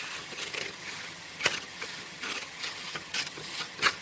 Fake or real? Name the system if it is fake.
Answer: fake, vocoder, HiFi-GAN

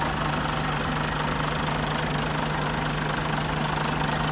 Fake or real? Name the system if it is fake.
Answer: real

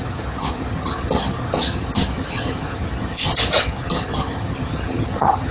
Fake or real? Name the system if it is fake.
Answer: fake, vocoder, HiFi-GAN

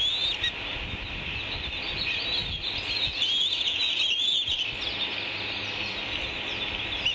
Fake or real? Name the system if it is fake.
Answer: real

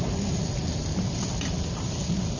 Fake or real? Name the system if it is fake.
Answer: real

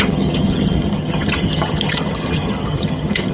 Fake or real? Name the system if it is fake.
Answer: fake, vocoder, HiFi-GAN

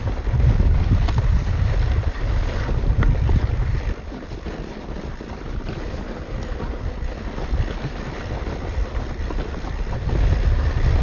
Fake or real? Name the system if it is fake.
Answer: real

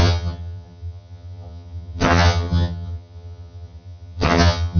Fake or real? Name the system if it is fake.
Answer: fake, vocoder, HiFi-GAN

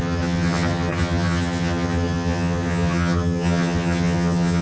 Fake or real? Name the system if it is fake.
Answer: fake, vocoder, HiFi-GAN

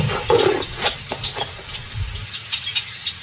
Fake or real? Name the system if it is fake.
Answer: real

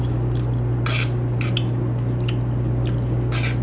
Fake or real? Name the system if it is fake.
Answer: real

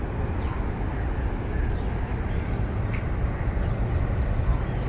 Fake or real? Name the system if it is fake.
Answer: real